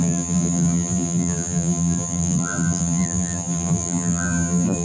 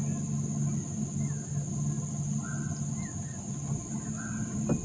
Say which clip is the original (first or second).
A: second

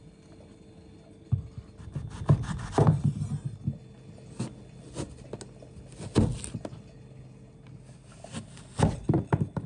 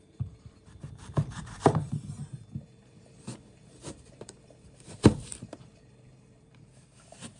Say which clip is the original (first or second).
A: first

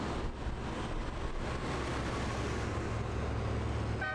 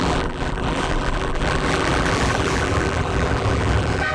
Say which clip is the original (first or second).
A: first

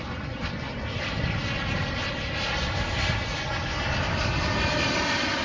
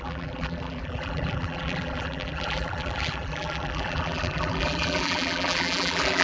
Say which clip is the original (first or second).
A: first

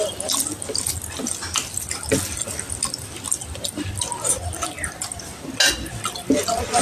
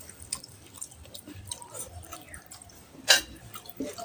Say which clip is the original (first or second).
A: first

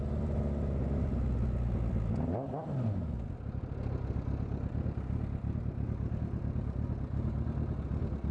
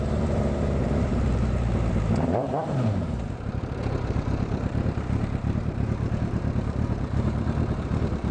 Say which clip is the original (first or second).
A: first